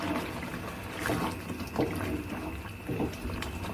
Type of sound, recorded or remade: recorded